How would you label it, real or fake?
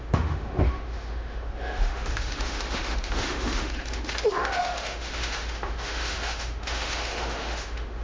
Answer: fake